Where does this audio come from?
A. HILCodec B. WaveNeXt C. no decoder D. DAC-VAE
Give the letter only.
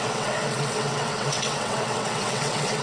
B